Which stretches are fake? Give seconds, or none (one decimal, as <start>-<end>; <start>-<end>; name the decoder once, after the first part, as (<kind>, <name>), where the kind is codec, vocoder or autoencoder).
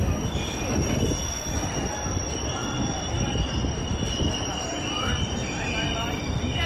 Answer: none